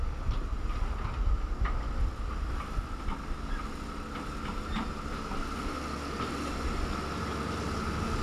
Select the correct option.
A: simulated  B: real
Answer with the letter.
B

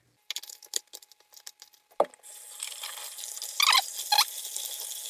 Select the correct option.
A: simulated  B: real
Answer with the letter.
B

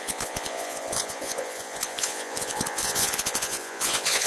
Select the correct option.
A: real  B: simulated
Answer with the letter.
B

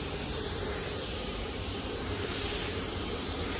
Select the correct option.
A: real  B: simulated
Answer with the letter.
B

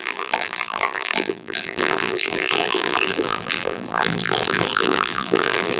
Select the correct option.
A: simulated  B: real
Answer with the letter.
A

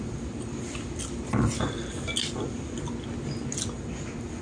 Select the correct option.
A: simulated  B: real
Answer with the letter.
B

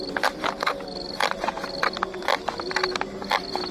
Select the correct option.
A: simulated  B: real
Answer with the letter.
B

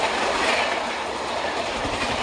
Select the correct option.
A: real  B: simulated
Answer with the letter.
A